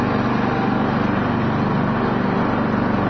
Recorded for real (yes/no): yes